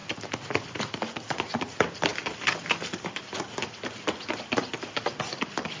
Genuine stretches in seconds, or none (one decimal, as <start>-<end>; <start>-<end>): 0.0-5.8